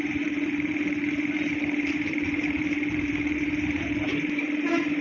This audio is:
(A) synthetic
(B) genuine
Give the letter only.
A